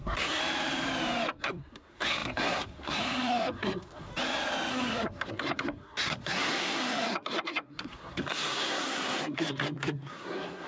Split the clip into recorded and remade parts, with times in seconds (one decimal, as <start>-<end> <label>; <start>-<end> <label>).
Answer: 0.0-0.4 remade; 0.4-1.4 recorded; 1.4-4.1 remade; 4.1-4.7 recorded; 4.7-10.7 remade